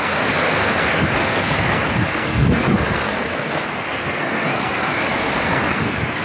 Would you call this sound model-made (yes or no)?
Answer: yes